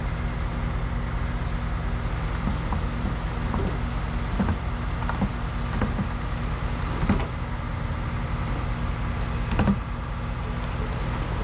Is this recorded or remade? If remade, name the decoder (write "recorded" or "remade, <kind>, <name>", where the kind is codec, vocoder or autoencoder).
recorded